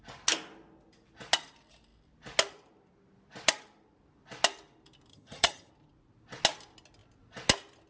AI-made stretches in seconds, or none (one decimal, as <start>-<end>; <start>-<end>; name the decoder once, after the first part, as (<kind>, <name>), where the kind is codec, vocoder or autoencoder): 5.1-5.7 (vocoder, HiFi-GAN)